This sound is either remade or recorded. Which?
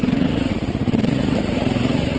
remade